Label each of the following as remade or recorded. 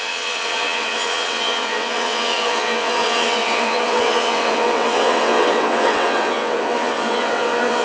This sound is remade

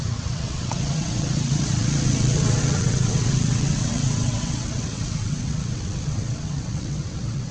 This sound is remade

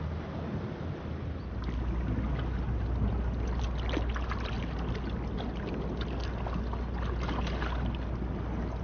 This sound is recorded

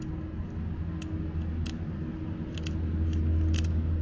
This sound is recorded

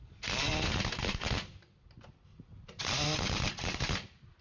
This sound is recorded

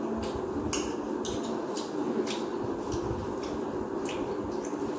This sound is recorded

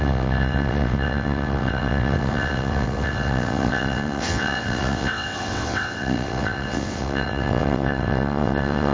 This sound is remade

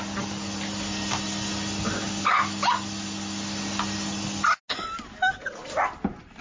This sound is recorded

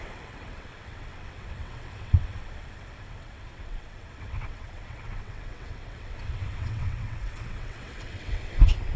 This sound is remade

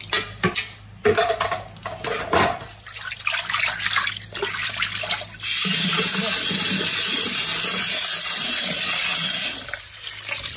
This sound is recorded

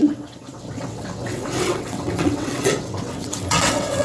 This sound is remade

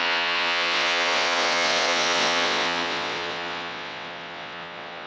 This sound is remade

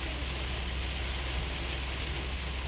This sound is recorded